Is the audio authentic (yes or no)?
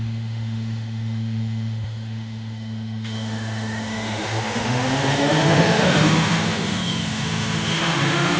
no